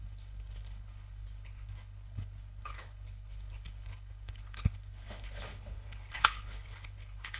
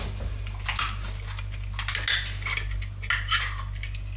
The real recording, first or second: second